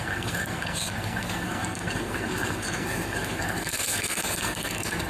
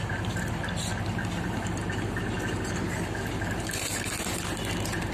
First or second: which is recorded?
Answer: second